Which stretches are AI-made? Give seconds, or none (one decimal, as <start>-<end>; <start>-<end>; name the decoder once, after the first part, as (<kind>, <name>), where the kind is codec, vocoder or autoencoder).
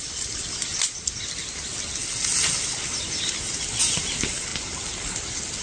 none